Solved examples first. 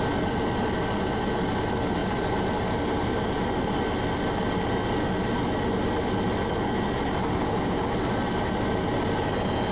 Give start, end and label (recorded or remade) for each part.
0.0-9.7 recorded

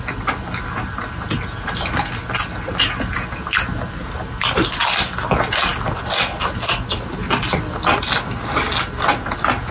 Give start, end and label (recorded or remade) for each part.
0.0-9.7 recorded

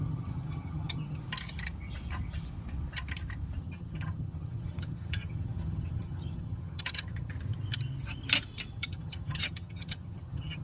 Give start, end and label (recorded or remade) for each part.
0.0-1.2 remade; 1.2-3.6 recorded; 3.6-7.3 remade; 7.3-8.7 recorded; 8.7-10.6 remade

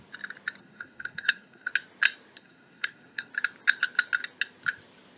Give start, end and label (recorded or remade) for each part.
0.0-0.6 recorded; 0.6-1.7 remade; 1.7-2.4 recorded; 2.4-3.3 remade; 3.3-5.2 recorded

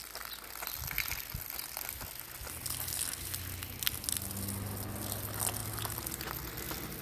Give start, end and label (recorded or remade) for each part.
0.0-7.0 recorded

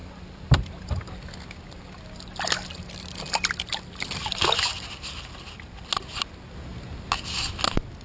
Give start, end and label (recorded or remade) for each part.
0.0-1.0 remade; 1.0-4.2 recorded; 4.2-5.9 remade; 5.9-8.0 recorded

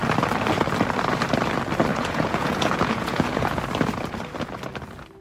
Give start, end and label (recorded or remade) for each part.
0.0-1.9 recorded; 1.9-3.6 remade; 3.6-5.2 recorded

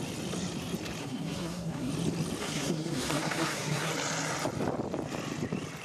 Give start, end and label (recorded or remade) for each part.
0.0-1.0 recorded; 1.0-1.9 remade; 1.9-2.4 recorded; 2.4-3.9 remade; 3.9-5.8 recorded